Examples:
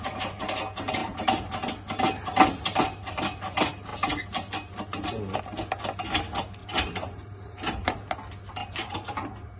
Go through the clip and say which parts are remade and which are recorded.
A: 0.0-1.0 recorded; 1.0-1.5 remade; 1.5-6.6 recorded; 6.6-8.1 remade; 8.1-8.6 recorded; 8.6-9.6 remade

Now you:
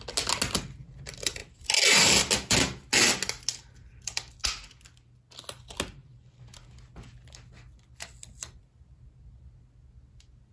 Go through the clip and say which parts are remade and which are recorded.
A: 0.0-10.5 recorded

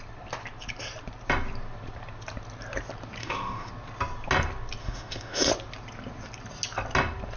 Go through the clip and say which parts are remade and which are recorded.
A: 0.0-3.2 recorded; 3.2-3.7 remade; 3.7-4.8 recorded; 4.8-5.5 remade; 5.5-7.4 recorded

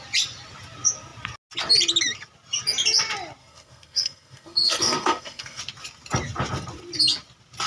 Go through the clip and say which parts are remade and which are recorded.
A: 0.0-3.4 recorded; 3.4-5.6 remade; 5.6-7.7 recorded

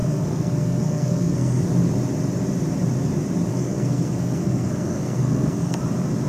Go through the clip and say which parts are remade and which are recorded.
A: 0.0-1.6 remade; 1.6-3.5 recorded; 3.5-5.8 remade; 5.8-6.3 recorded

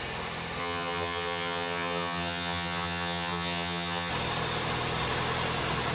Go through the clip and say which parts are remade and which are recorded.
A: 0.0-0.6 recorded; 0.6-4.1 remade; 4.1-5.9 recorded

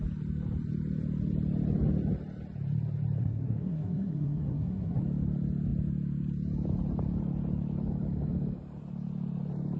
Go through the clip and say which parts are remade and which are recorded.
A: 0.0-3.2 recorded; 3.2-5.0 remade; 5.0-9.8 recorded

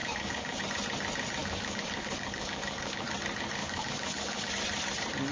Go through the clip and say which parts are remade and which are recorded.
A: 0.0-0.6 remade; 0.6-1.4 recorded; 1.4-3.1 remade; 3.1-3.6 recorded; 3.6-4.5 remade; 4.5-5.3 recorded